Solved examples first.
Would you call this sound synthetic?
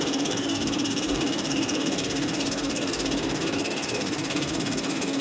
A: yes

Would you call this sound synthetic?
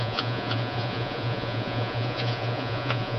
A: yes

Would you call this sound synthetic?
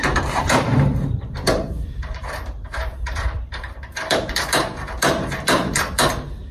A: yes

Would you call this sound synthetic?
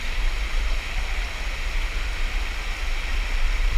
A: no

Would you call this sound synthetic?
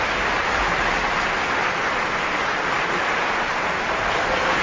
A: no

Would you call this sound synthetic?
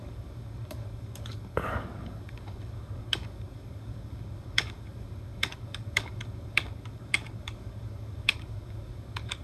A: yes